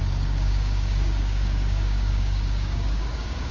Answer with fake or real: fake